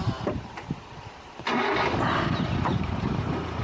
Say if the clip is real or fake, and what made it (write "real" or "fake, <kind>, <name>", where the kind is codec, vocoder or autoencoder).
real